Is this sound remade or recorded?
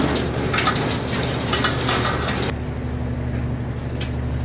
recorded